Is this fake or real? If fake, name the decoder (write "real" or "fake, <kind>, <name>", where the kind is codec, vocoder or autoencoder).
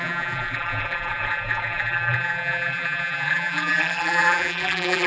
fake, vocoder, BigVGAN v2